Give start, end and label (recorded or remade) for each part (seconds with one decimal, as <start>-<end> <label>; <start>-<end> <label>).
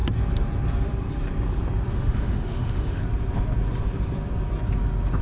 0.0-1.9 recorded; 1.9-3.0 remade; 3.0-5.2 recorded